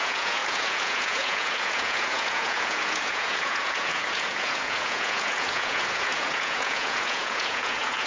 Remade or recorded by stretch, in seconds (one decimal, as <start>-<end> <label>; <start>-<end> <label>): 0.0-8.1 remade